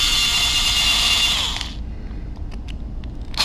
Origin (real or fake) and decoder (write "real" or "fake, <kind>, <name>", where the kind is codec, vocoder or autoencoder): real